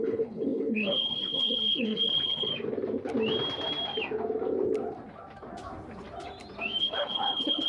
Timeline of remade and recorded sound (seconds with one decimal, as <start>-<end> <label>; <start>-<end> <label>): 0.0-2.5 remade; 2.5-6.8 recorded; 6.8-7.7 remade